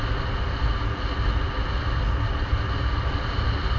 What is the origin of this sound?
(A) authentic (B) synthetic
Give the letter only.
A